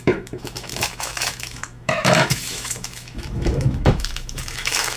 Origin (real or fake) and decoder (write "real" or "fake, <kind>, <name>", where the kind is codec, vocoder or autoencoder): fake, autoencoder, DAC-VAE